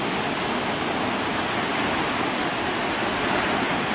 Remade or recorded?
recorded